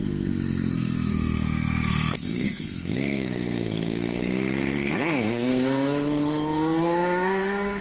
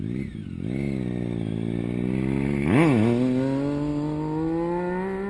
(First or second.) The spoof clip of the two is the first